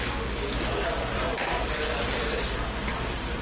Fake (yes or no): no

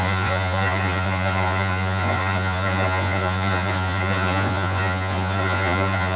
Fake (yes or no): yes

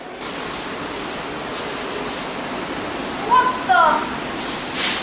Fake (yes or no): no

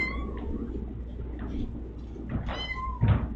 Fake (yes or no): no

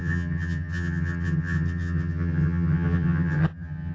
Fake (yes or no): yes